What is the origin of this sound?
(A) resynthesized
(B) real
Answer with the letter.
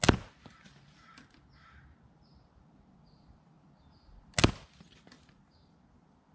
B